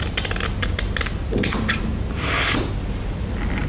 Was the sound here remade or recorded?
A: recorded